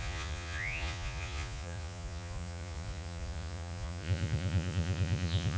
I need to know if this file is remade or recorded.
remade